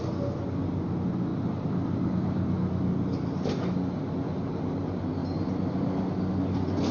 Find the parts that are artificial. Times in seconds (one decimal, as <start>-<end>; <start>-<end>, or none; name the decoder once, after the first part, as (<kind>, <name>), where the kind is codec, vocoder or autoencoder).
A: none